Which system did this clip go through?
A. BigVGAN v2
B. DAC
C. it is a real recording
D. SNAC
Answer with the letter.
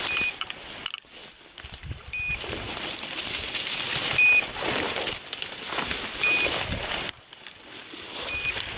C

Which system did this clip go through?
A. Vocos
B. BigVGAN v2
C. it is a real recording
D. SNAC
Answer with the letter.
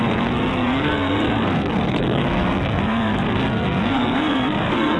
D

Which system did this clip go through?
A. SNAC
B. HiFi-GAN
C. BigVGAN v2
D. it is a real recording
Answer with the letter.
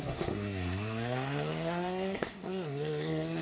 A